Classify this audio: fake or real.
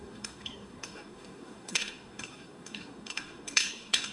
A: fake